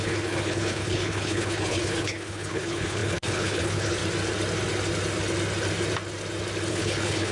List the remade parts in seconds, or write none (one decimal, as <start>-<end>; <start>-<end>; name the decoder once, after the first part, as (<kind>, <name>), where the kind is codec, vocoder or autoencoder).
0.0-4.0 (codec, HILCodec); 6.7-7.3